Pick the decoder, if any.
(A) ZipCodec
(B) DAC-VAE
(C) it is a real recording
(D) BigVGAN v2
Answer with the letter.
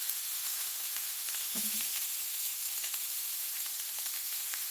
B